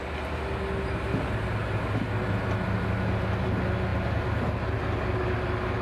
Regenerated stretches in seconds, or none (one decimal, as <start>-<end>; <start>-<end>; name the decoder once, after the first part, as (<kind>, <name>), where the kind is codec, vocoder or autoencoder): none